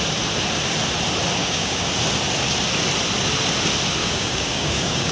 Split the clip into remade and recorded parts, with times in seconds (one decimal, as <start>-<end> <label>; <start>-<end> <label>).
0.0-1.4 recorded; 1.4-1.9 remade; 1.9-4.0 recorded; 4.0-5.1 remade